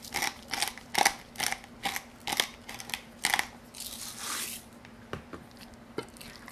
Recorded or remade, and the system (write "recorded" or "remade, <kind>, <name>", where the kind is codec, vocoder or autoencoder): recorded